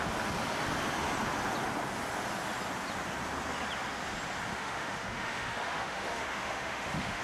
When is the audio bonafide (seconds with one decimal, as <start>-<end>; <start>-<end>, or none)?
0.0-4.5

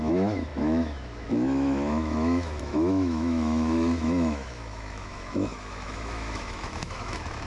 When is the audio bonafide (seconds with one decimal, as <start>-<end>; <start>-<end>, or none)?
none

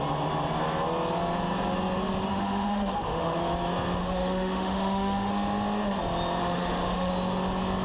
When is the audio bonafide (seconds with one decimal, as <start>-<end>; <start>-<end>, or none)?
0.0-2.3; 3.4-4.0; 5.3-6.4; 7.1-7.8